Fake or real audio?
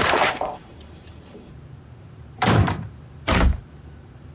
fake